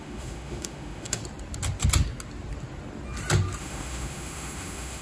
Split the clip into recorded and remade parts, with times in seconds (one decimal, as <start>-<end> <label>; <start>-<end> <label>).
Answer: 0.0-1.2 remade; 1.2-3.6 recorded; 3.6-5.0 remade